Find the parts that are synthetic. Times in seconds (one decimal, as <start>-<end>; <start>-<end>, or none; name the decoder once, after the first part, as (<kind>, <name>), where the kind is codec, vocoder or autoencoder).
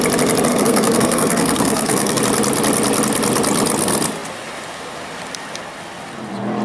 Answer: 0.5-2.2 (codec, SNAC)